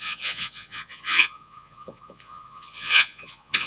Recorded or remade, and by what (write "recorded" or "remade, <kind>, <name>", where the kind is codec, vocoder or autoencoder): remade, vocoder, Vocos